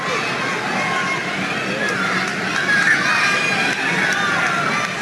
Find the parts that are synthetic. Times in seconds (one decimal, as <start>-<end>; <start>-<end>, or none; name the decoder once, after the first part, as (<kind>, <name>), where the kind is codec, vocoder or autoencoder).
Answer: none